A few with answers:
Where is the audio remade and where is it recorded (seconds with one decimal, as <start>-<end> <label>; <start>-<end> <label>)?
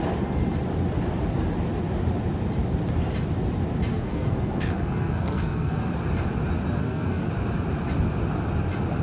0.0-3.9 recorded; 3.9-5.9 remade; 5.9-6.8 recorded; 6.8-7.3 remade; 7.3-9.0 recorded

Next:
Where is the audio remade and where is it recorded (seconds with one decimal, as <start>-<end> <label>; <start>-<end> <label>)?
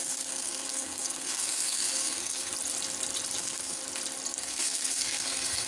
0.0-2.5 remade; 2.5-3.4 recorded; 3.4-3.8 remade; 3.8-4.4 recorded; 4.4-5.7 remade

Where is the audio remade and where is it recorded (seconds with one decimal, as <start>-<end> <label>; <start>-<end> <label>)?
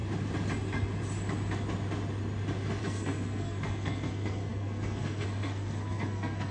0.0-2.8 recorded; 2.8-6.5 remade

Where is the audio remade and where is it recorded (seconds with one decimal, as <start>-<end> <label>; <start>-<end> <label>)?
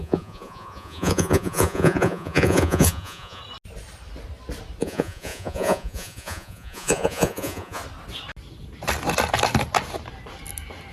0.0-3.4 remade; 3.4-4.8 recorded; 4.8-7.8 remade; 7.8-10.9 recorded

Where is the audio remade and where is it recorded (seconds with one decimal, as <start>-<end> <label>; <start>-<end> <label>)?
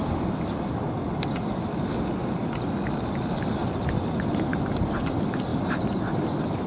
0.0-6.7 recorded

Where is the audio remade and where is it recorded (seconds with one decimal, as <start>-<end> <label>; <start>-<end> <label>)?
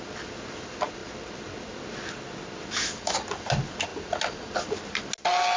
0.0-5.6 recorded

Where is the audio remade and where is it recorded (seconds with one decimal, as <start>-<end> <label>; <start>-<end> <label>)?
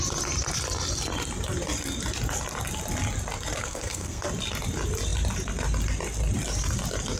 0.0-3.6 recorded; 3.6-4.2 remade; 4.2-7.2 recorded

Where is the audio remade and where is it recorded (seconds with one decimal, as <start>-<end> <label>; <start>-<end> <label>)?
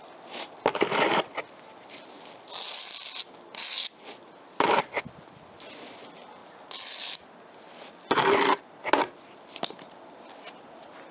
0.0-11.1 recorded